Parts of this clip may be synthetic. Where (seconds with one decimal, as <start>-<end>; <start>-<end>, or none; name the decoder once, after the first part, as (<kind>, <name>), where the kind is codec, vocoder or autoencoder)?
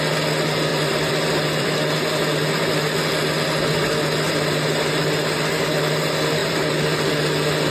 0.7-1.7 (vocoder, BigVGAN v2); 6.4-7.1